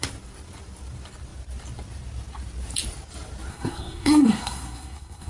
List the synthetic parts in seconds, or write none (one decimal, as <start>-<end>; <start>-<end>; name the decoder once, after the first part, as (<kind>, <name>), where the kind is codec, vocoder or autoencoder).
3.5-5.3 (codec, SNAC)